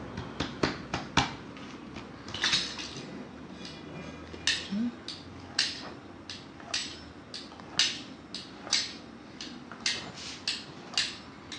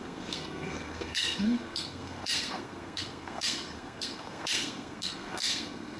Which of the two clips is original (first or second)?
first